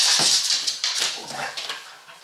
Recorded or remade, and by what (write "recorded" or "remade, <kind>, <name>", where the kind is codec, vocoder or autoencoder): recorded